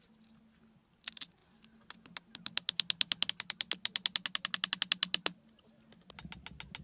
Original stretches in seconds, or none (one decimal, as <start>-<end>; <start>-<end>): 0.0-6.8